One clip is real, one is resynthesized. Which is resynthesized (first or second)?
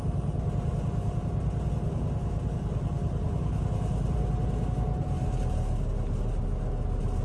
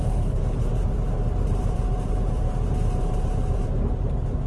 second